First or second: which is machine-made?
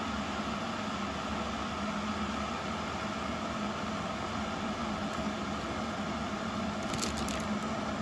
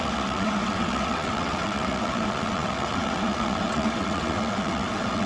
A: second